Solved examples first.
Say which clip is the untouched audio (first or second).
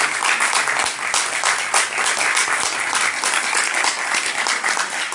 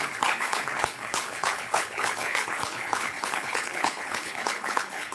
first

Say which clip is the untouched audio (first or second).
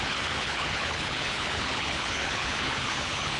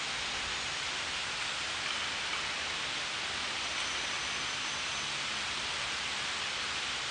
second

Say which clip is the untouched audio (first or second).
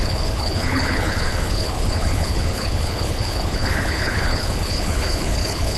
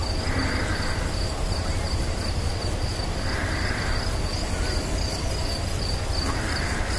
second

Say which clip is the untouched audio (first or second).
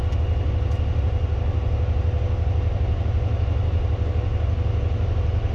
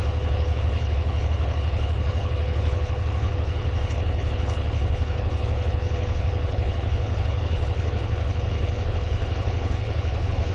first